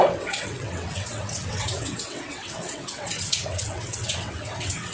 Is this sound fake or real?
fake